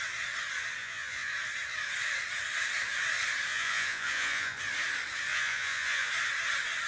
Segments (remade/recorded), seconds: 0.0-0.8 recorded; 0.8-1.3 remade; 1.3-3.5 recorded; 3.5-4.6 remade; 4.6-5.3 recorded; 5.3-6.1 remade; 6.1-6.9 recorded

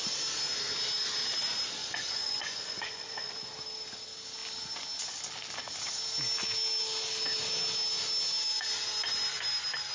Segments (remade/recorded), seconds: 0.0-1.8 recorded; 1.8-3.5 remade; 3.5-9.9 recorded

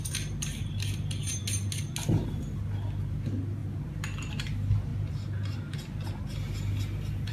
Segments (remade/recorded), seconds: 0.0-7.3 recorded

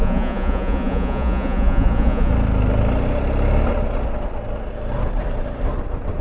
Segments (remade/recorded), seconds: 0.0-2.3 remade; 2.3-6.2 recorded

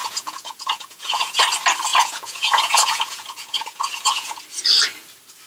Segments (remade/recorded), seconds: 0.0-1.4 remade; 1.4-1.9 recorded; 1.9-4.4 remade; 4.4-5.5 recorded

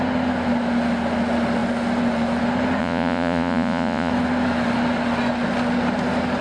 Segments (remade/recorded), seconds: 0.0-2.8 recorded; 2.8-4.1 remade; 4.1-6.4 recorded

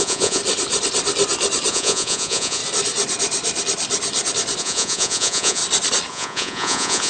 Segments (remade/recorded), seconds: 0.0-0.4 remade; 0.4-1.7 recorded; 1.7-2.6 remade; 2.6-4.6 recorded; 4.6-5.6 remade; 5.6-6.1 recorded; 6.1-7.1 remade